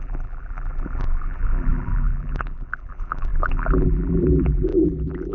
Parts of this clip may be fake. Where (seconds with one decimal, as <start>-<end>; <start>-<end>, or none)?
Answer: 0.0-5.3